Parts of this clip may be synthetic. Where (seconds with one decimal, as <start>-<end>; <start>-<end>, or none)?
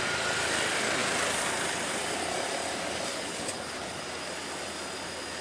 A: 3.1-4.0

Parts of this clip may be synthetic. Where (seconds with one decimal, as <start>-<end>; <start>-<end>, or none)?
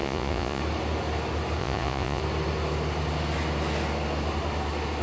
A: 0.0-0.6; 1.6-2.2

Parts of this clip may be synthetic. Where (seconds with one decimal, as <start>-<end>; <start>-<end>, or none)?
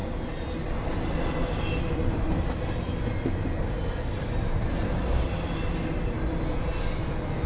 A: none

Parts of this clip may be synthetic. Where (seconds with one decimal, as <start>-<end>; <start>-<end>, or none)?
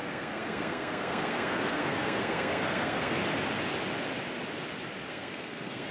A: 0.0-3.2; 5.1-5.9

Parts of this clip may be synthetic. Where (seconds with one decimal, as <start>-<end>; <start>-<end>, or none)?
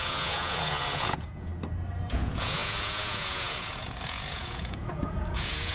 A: 0.0-1.5; 2.1-5.7